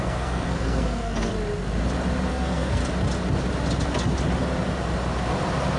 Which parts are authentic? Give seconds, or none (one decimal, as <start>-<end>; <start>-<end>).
1.3-2.3; 2.8-5.8